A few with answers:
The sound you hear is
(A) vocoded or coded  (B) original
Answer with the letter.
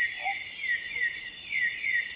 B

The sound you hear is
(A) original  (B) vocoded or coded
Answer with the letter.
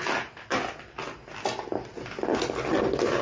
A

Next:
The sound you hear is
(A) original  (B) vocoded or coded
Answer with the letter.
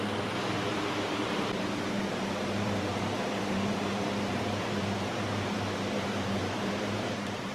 B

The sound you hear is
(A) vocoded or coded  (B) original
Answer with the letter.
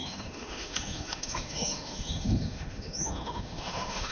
A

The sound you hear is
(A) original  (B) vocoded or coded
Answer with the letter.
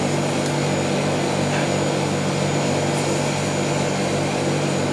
A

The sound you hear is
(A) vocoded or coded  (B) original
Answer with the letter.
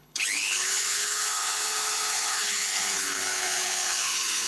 A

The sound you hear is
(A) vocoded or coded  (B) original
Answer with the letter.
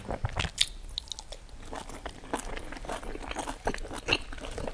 B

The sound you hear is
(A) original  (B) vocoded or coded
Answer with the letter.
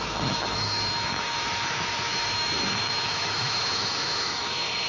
B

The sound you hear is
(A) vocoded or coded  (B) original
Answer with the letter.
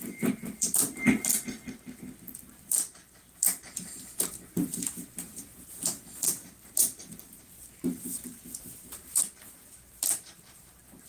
A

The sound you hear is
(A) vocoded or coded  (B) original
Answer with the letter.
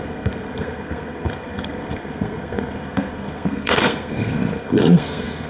A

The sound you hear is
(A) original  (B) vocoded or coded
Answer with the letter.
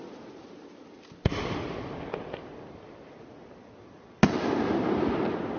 A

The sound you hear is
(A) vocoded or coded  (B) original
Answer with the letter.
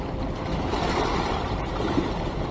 B